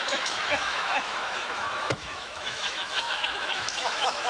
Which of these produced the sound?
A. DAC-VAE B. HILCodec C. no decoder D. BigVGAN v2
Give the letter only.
A